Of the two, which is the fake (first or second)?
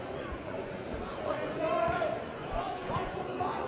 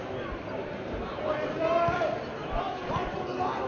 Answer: first